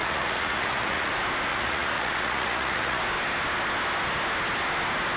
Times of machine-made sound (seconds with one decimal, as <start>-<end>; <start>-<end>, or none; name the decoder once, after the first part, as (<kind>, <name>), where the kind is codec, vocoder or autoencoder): 0.0-1.1 (vocoder, Vocos); 1.5-3.0